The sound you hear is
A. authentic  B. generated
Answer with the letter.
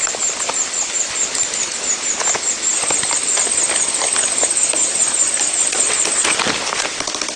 A